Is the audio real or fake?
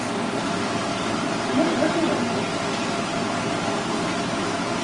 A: real